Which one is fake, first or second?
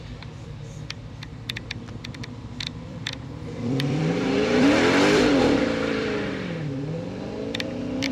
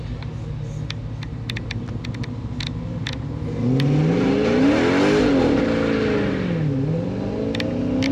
first